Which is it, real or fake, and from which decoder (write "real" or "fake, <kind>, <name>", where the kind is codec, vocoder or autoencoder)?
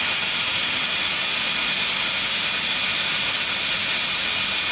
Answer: real